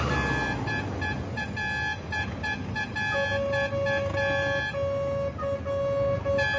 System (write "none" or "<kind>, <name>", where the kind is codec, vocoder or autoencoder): none